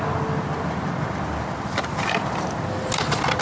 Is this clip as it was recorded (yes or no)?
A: yes